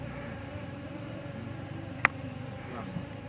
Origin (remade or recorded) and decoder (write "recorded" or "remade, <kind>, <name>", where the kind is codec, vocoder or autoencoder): recorded